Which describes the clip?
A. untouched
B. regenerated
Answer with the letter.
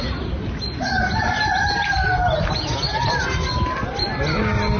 A